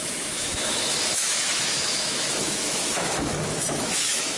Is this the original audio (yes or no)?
no